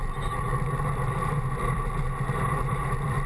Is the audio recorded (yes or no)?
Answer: no